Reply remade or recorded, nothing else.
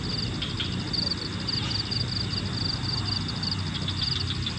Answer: recorded